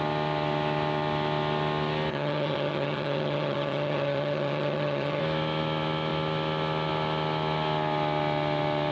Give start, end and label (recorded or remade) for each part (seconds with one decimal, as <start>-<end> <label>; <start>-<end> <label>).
0.0-2.1 recorded; 2.1-5.2 remade; 5.2-8.9 recorded